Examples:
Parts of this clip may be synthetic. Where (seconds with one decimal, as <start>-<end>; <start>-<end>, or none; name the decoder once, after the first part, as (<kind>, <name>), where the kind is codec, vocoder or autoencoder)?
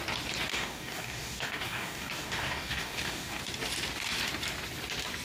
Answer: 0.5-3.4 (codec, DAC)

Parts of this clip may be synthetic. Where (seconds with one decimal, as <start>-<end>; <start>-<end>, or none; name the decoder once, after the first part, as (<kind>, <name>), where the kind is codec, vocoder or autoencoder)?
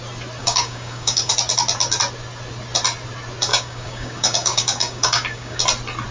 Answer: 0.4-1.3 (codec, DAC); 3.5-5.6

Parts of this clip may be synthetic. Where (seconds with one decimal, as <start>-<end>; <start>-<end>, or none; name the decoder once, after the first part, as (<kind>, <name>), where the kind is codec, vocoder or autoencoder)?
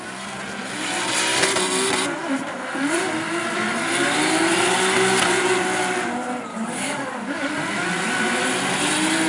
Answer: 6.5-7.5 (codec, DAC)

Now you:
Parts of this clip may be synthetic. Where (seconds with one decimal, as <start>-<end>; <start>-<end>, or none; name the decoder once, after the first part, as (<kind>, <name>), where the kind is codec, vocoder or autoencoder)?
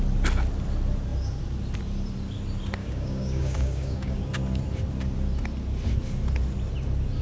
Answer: 2.8-4.2 (codec, DAC)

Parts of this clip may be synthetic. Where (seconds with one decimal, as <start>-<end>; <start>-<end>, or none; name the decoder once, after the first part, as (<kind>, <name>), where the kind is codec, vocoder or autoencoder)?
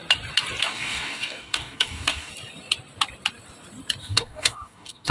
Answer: 0.6-2.3 (codec, DAC); 4.0-5.1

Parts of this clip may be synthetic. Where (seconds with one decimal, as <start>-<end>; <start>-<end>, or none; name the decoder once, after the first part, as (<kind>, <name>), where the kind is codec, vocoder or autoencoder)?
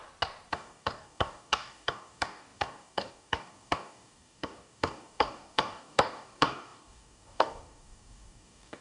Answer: 0.5-8.8 (codec, DAC)